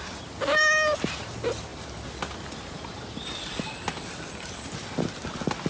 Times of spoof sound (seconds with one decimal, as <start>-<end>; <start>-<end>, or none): none